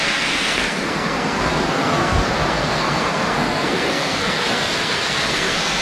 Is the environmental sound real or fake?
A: fake